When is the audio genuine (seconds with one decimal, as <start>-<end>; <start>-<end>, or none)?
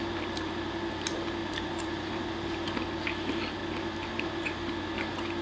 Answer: 0.0-1.4; 2.2-5.4